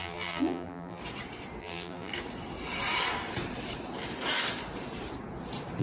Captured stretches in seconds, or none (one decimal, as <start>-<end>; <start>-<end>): 1.0-1.6; 2.1-5.8